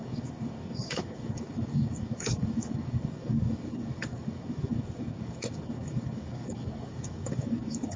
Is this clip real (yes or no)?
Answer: no